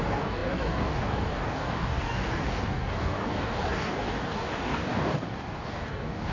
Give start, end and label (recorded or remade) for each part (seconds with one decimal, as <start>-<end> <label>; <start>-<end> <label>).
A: 0.0-6.3 remade